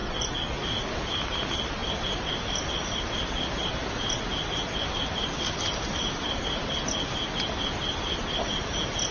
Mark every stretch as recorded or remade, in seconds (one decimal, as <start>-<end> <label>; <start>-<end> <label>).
0.0-1.0 remade; 1.0-1.8 recorded; 1.8-2.3 remade; 2.3-9.1 recorded